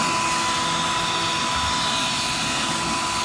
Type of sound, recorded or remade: recorded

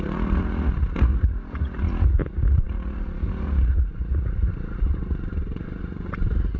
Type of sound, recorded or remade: remade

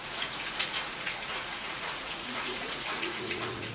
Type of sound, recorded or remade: remade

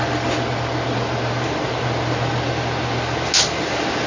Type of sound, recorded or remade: recorded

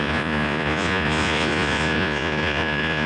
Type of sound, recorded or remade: remade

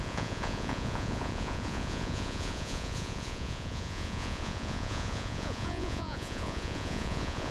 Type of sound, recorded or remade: remade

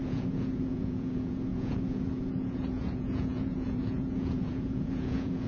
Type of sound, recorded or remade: remade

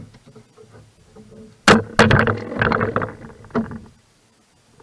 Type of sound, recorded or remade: recorded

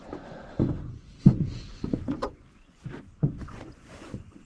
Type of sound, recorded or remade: remade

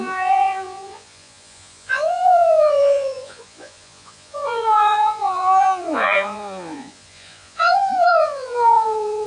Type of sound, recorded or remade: remade